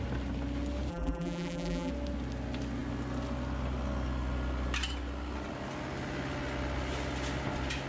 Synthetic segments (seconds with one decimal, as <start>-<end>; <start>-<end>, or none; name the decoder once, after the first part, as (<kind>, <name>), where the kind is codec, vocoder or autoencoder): 0.9-1.9 (vocoder, BigVGAN v2)